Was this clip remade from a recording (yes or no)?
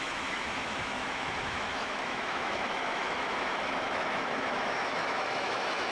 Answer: yes